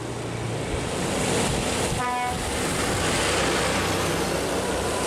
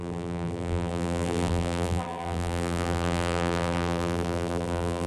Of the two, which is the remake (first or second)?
second